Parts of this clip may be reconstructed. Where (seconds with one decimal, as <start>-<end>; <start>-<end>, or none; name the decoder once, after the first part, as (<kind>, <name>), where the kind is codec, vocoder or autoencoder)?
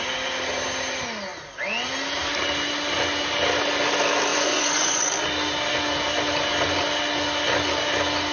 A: 4.3-5.0 (vocoder, Vocos)